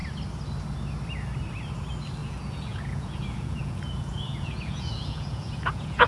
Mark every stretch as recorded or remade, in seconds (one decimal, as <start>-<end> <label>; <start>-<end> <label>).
0.0-2.2 recorded; 2.2-6.1 remade